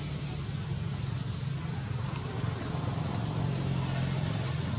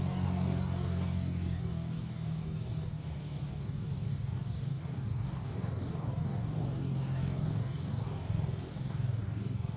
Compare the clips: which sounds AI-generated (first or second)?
second